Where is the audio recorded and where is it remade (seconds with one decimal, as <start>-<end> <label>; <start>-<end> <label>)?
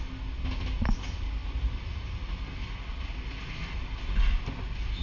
0.0-3.6 recorded; 3.6-4.2 remade; 4.2-5.0 recorded